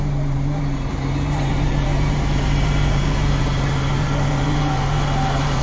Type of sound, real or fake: fake